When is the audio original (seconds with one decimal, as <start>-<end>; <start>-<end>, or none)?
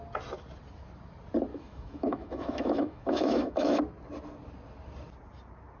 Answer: 0.0-1.5; 3.8-5.8